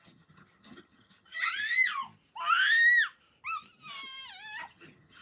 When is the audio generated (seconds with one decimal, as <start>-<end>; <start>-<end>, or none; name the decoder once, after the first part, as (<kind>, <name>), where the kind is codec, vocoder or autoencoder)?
0.0-1.5 (vocoder, HiFi-GAN); 4.6-5.2